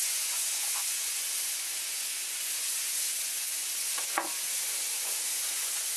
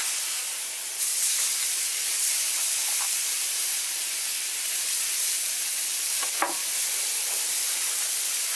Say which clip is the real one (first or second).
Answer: second